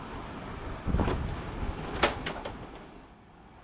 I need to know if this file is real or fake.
real